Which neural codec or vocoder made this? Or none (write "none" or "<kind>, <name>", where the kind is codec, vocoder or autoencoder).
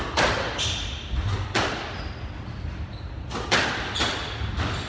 none